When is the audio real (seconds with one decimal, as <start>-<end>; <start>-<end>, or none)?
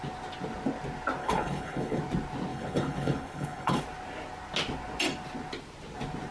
0.0-1.2; 2.0-2.5; 3.8-6.3